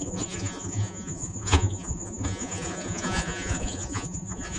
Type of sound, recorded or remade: remade